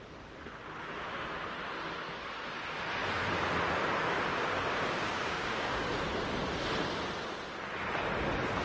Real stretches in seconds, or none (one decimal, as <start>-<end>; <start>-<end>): 0.0-4.3; 6.0-8.6